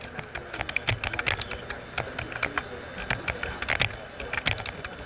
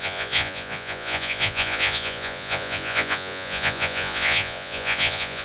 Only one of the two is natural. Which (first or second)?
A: first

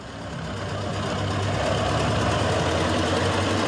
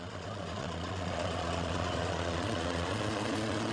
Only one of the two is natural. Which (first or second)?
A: first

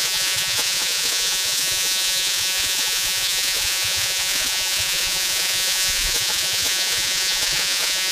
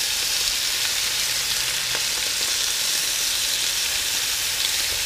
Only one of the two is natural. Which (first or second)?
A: second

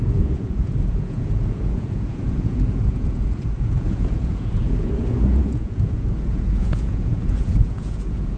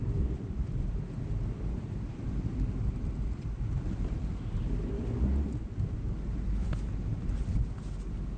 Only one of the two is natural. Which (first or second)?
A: second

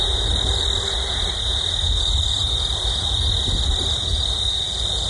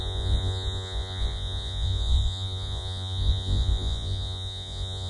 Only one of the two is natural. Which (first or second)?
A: first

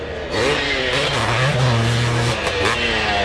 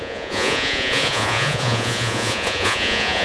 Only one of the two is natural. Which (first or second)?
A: first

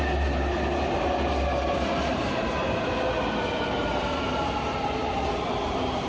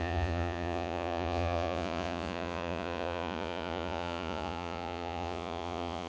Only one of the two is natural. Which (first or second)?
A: first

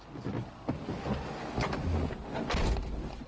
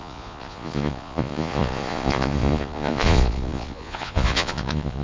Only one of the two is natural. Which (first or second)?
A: first